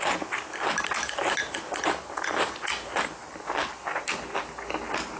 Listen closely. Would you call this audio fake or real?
real